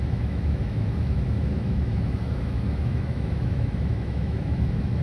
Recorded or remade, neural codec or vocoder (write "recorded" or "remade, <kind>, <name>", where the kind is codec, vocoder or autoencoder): remade, autoencoder, DAC-VAE